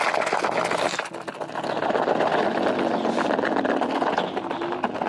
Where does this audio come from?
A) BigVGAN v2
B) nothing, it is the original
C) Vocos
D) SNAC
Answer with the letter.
B